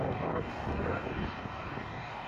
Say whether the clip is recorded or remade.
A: remade